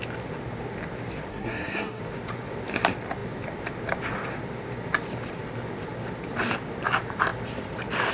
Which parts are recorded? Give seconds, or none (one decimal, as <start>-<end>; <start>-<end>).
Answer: 0.0-1.3; 2.0-8.1